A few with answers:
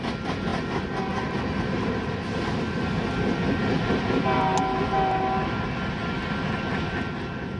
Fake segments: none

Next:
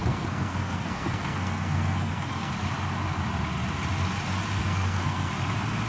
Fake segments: 0.0-2.5 (codec, SNAC); 4.6-5.3

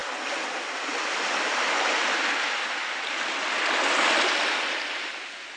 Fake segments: none

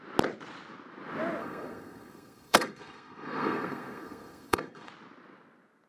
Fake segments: 1.4-4.9 (codec, SNAC)

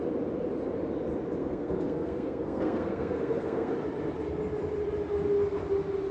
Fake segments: 1.4-3.7 (codec, SNAC)